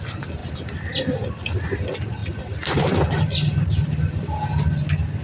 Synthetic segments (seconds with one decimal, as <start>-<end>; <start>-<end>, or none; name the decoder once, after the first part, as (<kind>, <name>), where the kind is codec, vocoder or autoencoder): none